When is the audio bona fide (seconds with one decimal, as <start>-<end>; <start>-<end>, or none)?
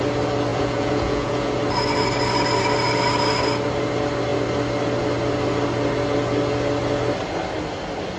0.0-0.5; 1.6-8.2